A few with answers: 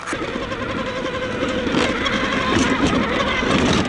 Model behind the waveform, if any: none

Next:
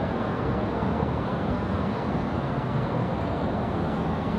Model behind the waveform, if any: codec, SNAC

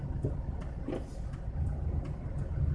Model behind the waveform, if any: none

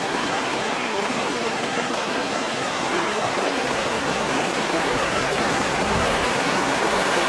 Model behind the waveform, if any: codec, SNAC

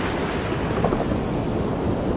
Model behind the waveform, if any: none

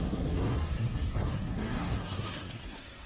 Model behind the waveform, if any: codec, SNAC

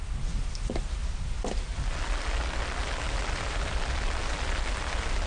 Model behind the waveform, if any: none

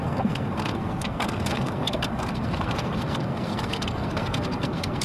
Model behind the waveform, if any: codec, SNAC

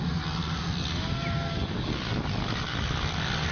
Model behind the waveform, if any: none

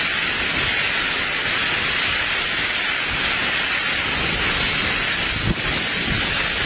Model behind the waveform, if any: none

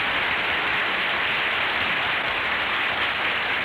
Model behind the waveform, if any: none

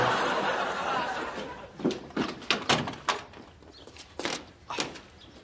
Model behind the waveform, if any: none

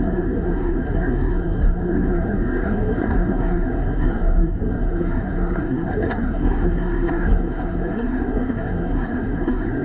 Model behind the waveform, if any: codec, SNAC